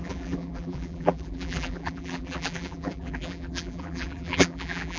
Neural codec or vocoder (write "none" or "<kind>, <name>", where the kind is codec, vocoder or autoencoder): vocoder, BigVGAN v2